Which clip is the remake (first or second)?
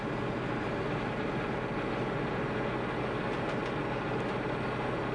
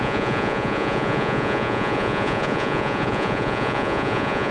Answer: second